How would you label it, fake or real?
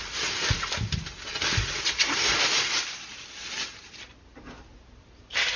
real